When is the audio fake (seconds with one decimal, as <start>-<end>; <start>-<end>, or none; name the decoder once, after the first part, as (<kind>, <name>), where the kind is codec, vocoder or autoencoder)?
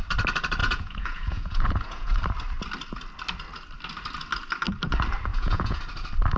0.6-2.2 (vocoder, Vocos); 5.3-5.8